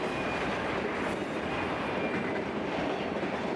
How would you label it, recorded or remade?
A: recorded